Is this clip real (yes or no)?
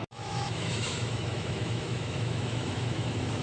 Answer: no